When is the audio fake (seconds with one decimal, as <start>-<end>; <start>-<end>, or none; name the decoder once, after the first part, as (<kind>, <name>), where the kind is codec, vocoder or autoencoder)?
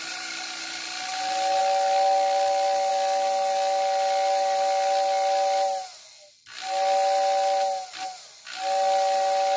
none